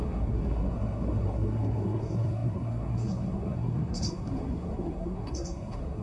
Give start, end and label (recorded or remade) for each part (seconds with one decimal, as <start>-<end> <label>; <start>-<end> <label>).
0.0-6.0 remade